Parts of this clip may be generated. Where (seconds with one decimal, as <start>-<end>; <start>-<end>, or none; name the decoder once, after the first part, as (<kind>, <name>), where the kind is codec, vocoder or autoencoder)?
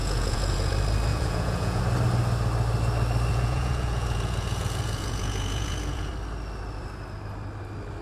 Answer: 0.0-0.7 (vocoder, Vocos); 1.1-1.8; 3.3-6.1